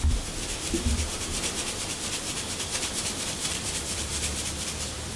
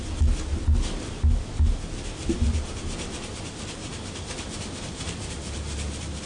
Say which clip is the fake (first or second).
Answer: first